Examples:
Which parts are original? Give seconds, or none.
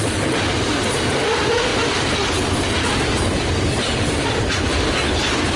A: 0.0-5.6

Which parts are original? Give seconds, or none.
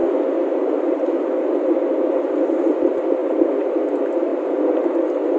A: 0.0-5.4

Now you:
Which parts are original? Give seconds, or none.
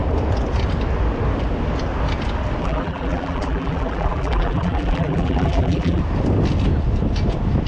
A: 0.0-2.6; 6.0-7.7